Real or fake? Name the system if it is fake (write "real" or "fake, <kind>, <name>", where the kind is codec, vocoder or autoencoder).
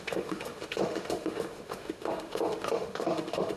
fake, autoencoder, DAC-VAE